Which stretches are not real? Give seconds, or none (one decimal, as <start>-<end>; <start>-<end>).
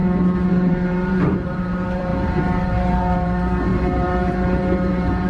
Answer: 0.5-5.3